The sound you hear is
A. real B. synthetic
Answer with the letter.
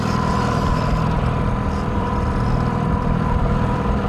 B